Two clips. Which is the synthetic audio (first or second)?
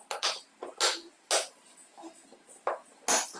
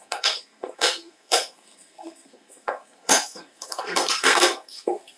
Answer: second